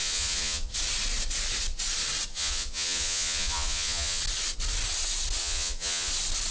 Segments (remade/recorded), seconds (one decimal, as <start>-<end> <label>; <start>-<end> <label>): 0.0-0.7 remade; 0.7-2.3 recorded; 2.3-4.2 remade; 4.2-5.4 recorded; 5.4-6.1 remade; 6.1-6.5 recorded